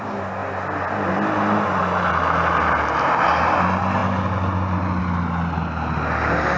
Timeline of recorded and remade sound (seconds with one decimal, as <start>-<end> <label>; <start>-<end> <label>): 0.0-6.6 recorded